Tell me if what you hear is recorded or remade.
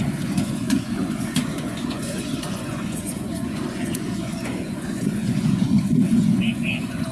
remade